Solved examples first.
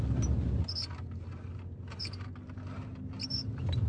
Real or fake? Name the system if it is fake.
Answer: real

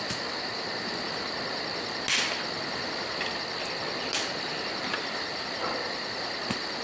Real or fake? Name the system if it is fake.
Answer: real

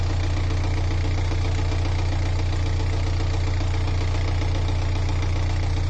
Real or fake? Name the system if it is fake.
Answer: real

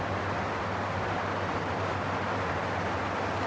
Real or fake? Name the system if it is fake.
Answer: real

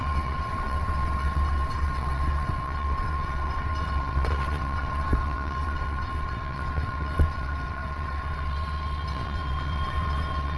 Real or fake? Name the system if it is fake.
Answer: fake, vocoder, WaveNeXt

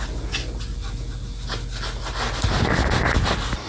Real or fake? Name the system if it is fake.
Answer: real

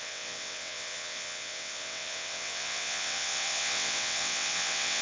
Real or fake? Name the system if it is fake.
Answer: fake, vocoder, WaveNeXt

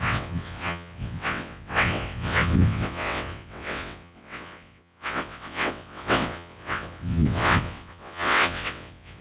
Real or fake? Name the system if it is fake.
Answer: fake, vocoder, WaveNeXt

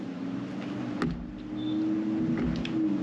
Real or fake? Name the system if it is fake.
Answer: real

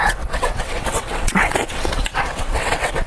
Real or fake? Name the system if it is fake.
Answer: fake, vocoder, WaveNeXt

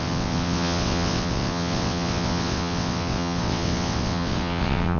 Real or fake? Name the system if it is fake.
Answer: fake, vocoder, WaveNeXt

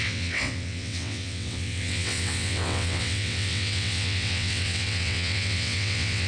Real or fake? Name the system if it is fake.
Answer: fake, vocoder, WaveNeXt